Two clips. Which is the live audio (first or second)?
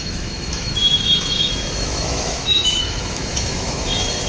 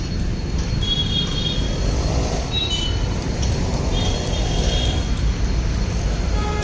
second